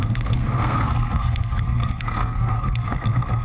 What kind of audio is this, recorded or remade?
remade